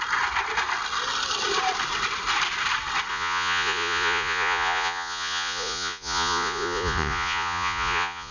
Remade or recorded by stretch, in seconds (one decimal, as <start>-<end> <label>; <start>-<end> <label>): 0.0-3.1 recorded; 3.1-8.3 remade